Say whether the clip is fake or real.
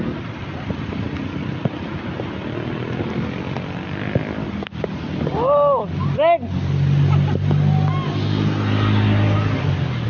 real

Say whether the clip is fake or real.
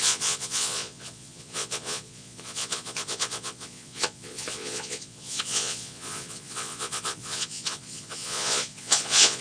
fake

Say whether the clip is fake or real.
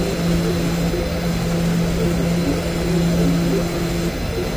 real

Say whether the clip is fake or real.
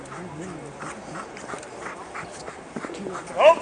real